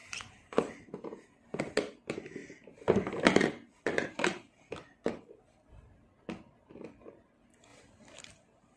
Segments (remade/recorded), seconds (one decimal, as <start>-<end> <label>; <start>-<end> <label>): 0.0-8.8 recorded